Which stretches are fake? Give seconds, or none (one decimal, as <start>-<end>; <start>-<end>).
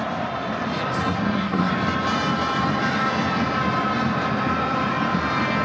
1.0-1.7